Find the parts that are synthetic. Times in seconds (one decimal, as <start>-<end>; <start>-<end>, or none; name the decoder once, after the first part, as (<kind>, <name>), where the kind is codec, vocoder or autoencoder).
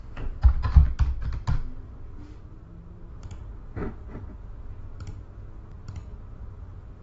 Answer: none